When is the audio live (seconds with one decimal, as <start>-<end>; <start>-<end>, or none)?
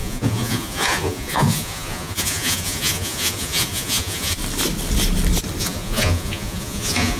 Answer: 4.4-5.6